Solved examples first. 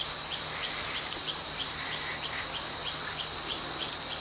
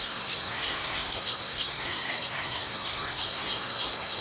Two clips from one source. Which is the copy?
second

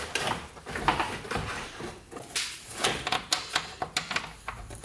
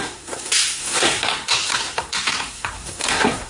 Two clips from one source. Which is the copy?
second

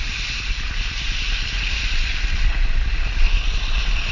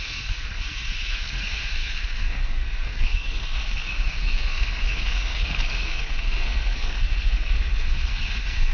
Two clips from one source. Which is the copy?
second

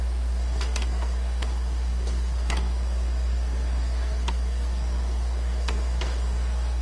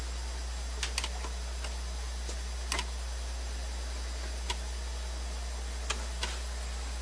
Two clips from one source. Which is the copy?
first